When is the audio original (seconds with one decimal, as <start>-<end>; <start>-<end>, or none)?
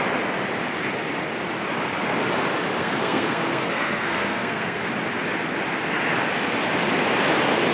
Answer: 0.0-2.8; 4.8-7.7